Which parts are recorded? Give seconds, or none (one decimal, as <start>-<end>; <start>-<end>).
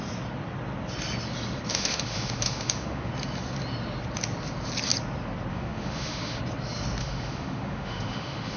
0.0-1.7; 3.1-5.5; 6.4-7.0